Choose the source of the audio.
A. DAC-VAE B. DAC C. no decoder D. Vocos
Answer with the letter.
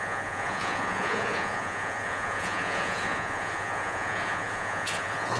D